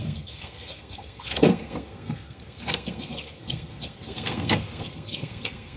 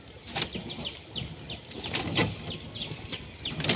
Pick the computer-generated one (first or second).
first